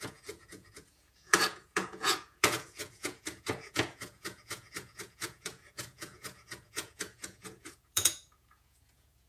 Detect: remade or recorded remade